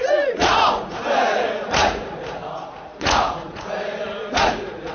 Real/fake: fake